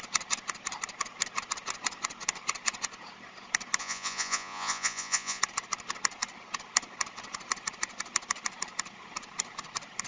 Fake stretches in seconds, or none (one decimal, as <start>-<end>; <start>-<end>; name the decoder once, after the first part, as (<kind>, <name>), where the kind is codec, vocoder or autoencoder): 3.8-5.4 (vocoder, Vocos)